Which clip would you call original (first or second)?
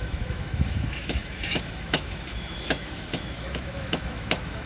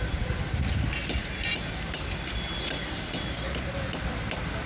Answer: second